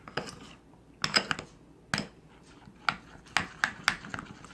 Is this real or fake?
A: real